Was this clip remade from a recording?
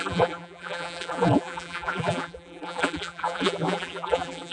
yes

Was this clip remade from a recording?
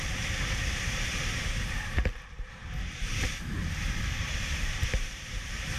yes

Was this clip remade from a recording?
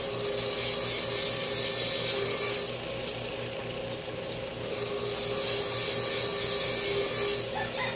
no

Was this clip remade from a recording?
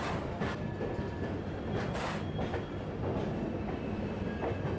no